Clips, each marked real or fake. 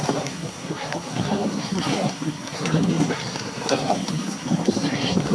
fake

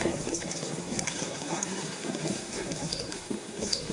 fake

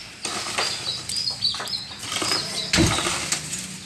real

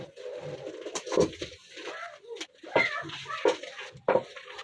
real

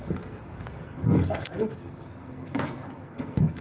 fake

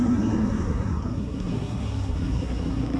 fake